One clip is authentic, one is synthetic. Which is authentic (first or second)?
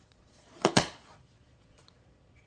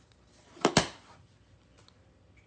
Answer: second